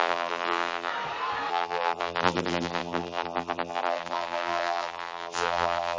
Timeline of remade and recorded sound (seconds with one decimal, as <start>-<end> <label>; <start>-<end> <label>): 0.0-0.9 remade; 0.9-1.5 recorded; 1.5-6.0 remade